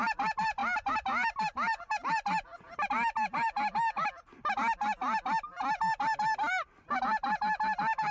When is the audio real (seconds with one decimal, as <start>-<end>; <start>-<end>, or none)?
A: 0.0-8.1